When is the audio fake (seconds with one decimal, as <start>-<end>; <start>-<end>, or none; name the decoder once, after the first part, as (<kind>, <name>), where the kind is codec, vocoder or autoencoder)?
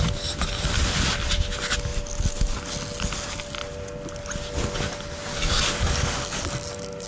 5.3-7.1 (codec, DAC)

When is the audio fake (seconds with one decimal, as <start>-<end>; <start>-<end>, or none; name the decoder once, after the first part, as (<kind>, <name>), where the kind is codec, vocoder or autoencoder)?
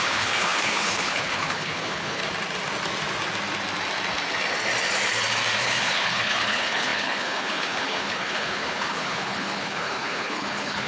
0.0-2.2 (codec, HILCodec); 5.6-10.9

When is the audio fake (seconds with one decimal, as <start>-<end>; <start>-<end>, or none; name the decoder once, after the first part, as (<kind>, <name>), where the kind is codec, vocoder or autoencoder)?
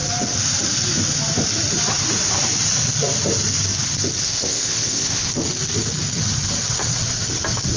4.2-5.3 (codec, ZipCodec)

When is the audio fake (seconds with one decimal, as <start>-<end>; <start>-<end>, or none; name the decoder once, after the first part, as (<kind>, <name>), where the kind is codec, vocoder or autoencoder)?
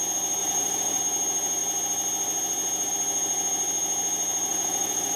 0.4-1.0 (vocoder, Vocos); 4.5-5.2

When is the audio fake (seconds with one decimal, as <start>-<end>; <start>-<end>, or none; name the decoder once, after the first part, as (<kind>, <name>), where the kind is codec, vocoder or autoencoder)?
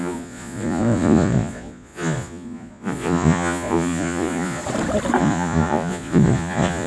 0.0-4.6 (vocoder, Vocos); 5.2-6.9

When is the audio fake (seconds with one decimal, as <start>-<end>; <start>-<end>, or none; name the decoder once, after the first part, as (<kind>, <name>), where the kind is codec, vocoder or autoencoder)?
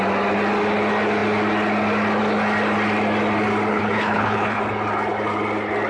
3.7-4.6 (codec, HILCodec)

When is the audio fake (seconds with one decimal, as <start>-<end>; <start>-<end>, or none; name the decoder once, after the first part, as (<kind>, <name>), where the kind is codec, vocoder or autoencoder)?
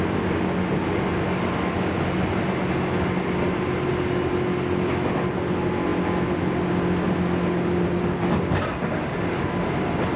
none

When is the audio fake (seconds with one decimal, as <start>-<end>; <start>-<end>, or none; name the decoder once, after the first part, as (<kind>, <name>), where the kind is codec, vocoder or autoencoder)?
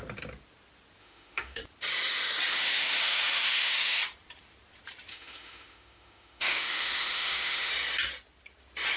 1.0-1.6 (autoencoder, DAC-VAE); 2.5-4.0; 5.1-7.7